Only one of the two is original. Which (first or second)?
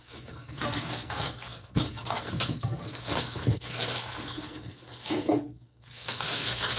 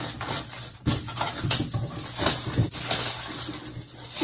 second